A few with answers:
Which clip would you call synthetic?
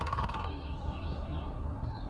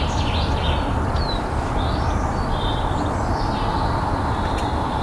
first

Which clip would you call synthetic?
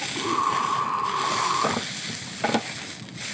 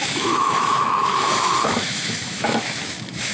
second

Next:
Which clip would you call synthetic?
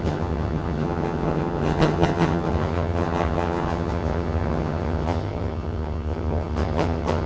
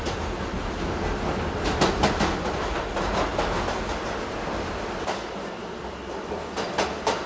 first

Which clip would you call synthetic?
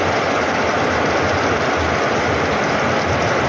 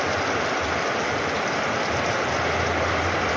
second